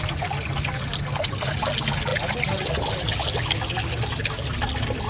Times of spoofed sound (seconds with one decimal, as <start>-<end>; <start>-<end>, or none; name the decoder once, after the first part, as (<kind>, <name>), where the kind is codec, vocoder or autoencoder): none